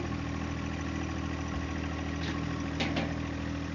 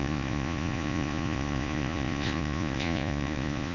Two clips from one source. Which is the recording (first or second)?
first